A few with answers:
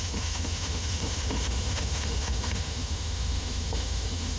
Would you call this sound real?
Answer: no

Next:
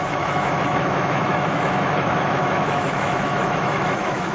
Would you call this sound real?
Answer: no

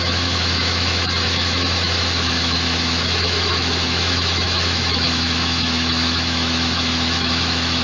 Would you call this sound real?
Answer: no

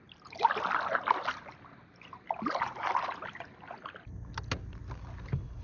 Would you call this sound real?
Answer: yes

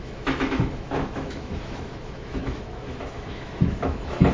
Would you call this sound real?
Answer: no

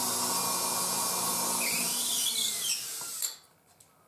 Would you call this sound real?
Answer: yes